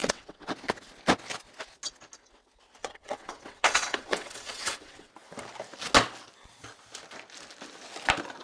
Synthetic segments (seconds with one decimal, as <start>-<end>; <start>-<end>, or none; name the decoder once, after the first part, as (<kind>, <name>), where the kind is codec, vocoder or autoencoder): 0.0-0.5 (vocoder, WaveNeXt); 2.8-5.1